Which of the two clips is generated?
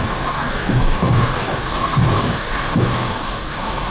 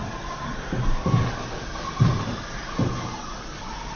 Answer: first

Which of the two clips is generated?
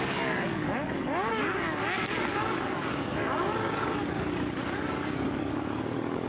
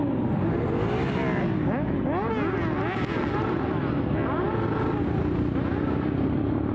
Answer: first